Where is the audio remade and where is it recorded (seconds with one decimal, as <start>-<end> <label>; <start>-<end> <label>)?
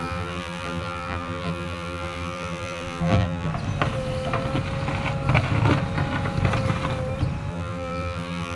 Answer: 0.0-3.5 remade; 3.5-7.5 recorded; 7.5-8.6 remade